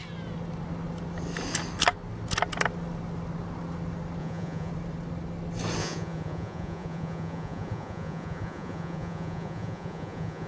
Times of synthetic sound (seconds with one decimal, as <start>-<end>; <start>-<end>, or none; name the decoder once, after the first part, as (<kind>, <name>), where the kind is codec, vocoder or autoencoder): 4.2-4.7 (vocoder, Vocos); 5.8-10.5